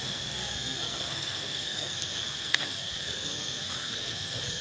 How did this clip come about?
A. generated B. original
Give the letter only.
A